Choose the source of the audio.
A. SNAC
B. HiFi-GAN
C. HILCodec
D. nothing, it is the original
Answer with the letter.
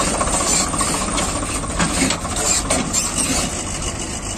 D